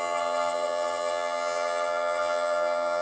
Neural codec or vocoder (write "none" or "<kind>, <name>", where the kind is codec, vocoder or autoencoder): vocoder, HiFi-GAN